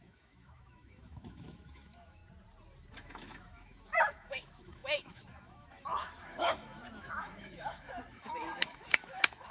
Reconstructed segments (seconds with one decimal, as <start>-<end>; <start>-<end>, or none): 0.0-2.2; 2.9-9.5